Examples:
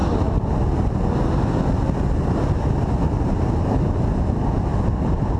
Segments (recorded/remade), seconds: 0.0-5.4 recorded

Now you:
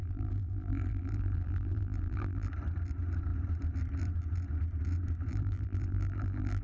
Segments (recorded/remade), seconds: 0.0-2.5 remade; 2.5-5.3 recorded; 5.3-6.6 remade

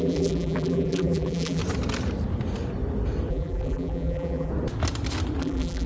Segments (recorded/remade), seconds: 0.0-1.6 remade; 1.6-3.3 recorded; 3.3-4.5 remade; 4.5-5.4 recorded; 5.4-5.9 remade

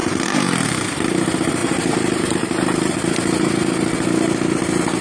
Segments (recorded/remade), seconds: 0.0-1.1 remade; 1.1-1.6 recorded; 1.6-2.9 remade; 2.9-5.0 recorded

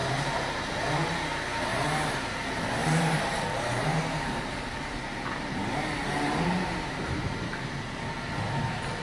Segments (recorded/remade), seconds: 0.0-0.5 remade; 0.5-1.7 recorded; 1.7-2.3 remade; 2.3-2.8 recorded; 2.8-7.8 remade; 7.8-9.0 recorded

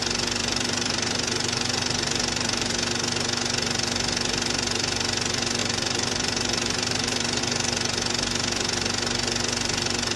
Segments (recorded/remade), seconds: 0.0-0.4 recorded; 0.4-2.7 remade; 2.7-5.6 recorded; 5.6-7.4 remade; 7.4-10.2 recorded